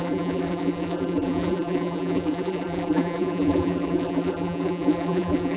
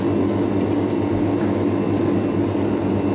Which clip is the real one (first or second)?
second